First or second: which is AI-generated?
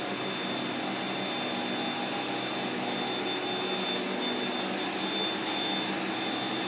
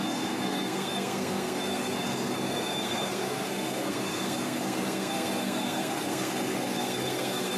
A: second